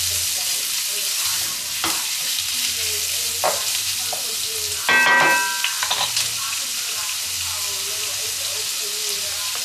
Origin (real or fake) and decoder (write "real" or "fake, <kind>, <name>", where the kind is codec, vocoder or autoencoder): real